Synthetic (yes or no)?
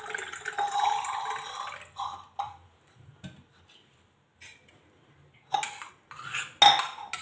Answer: no